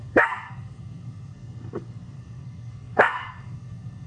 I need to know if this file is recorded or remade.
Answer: remade